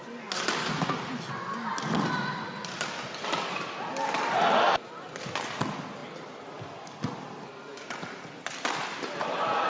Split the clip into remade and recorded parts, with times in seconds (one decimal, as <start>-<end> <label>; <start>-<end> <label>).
0.0-9.7 recorded